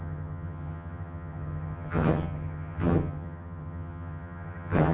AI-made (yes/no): yes